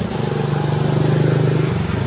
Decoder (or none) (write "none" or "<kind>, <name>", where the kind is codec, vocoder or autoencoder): none